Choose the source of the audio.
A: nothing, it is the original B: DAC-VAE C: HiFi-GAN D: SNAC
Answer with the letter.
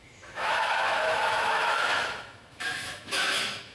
B